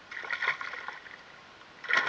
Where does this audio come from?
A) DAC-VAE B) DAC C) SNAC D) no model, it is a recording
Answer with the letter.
D